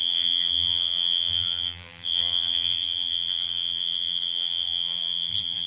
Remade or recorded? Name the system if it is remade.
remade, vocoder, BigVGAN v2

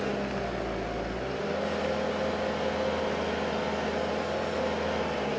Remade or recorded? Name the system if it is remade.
recorded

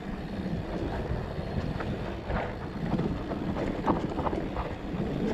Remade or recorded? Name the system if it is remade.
recorded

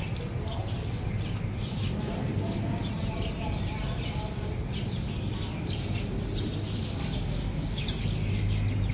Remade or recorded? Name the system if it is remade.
recorded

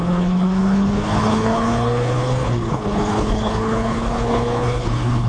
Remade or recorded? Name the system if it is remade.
remade, codec, HILCodec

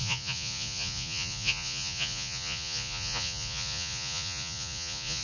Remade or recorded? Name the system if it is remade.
remade, vocoder, Vocos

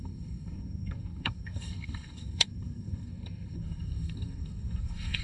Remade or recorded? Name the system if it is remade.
remade, codec, SNAC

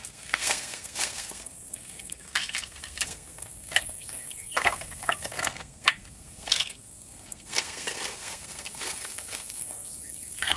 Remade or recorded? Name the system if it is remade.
remade, codec, SNAC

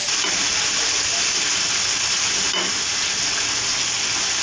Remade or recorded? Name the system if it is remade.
recorded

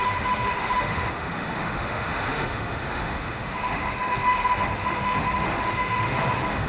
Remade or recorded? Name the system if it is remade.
remade, autoencoder, DAC-VAE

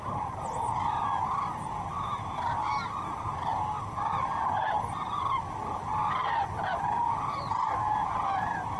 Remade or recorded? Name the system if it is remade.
recorded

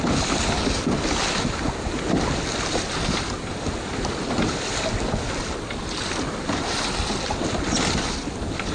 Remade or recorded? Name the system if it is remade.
recorded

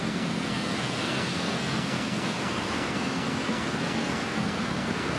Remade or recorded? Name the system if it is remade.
remade, codec, SNAC